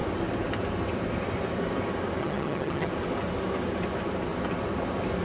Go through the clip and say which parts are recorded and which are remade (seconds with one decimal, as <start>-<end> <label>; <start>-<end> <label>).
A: 0.0-2.2 recorded; 2.2-2.9 remade; 2.9-5.2 recorded